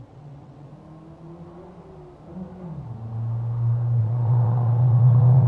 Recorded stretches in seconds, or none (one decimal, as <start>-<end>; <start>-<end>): 0.7-4.0